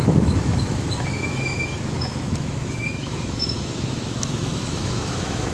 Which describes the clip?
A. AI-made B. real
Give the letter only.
A